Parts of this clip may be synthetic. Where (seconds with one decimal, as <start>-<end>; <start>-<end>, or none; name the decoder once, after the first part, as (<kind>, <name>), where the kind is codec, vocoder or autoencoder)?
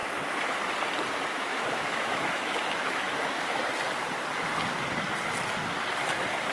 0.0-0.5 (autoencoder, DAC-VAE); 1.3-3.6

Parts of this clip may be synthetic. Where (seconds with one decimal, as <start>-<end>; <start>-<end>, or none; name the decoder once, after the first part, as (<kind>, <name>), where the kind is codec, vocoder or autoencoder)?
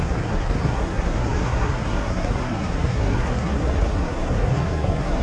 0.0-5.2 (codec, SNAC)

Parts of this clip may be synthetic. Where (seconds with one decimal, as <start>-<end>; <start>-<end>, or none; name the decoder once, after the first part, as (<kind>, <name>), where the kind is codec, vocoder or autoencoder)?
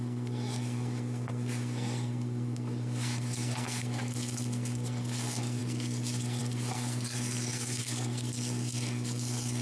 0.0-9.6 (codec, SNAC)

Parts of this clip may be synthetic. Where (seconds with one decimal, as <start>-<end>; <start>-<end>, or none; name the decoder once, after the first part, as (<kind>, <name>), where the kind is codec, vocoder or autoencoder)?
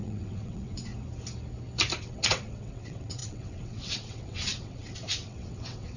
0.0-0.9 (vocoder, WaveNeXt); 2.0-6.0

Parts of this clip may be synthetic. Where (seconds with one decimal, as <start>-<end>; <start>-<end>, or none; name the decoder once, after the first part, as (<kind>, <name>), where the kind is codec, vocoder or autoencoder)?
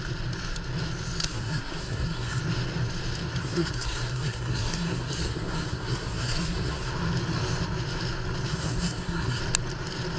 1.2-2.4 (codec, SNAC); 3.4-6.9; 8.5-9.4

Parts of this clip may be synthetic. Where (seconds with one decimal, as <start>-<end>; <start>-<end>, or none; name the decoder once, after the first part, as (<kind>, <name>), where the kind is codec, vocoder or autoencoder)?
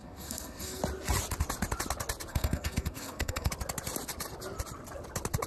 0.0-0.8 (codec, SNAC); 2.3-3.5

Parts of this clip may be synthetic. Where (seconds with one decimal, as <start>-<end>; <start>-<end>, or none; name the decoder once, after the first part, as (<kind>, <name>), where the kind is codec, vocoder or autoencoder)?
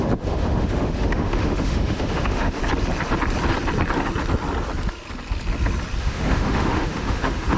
0.0-2.6 (autoencoder, DAC-VAE); 6.0-7.6